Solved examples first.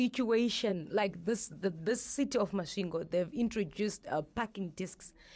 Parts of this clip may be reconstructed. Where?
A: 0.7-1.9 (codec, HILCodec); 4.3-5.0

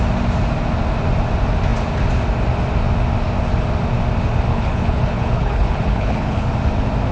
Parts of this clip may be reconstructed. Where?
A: 4.5-6.5 (codec, HILCodec)

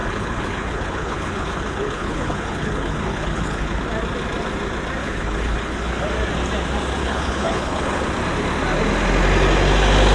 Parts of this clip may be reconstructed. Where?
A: 0.0-3.8 (codec, HILCodec); 5.0-6.0; 7.0-8.0

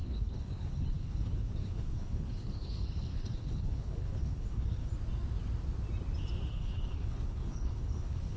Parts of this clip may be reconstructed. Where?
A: 0.0-4.9 (codec, HILCodec); 6.5-8.4

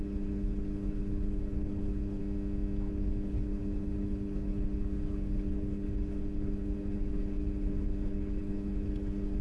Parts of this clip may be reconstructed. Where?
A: 0.0-2.2 (codec, HILCodec); 2.9-9.4

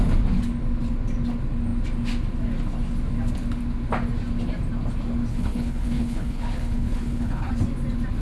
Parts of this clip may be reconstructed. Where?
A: 5.3-7.5 (codec, HILCodec)